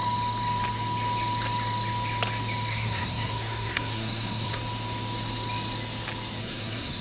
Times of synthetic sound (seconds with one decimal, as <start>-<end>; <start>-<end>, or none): 2.7-4.6; 6.4-7.0